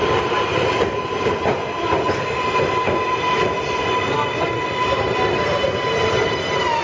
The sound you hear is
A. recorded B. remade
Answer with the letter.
A